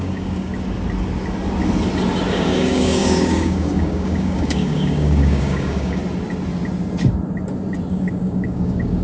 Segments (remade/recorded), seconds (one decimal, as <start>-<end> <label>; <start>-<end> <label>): 0.0-0.5 remade; 0.5-2.3 recorded; 2.3-6.0 remade; 6.0-7.9 recorded; 7.9-9.0 remade